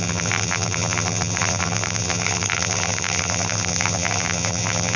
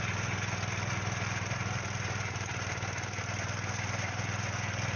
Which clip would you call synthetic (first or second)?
first